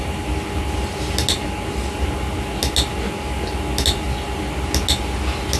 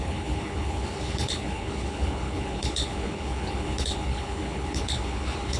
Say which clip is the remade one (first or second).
second